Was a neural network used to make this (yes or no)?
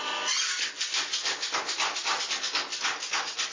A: no